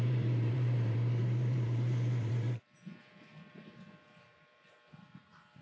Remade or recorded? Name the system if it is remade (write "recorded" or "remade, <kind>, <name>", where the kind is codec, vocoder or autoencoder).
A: remade, vocoder, BigVGAN v2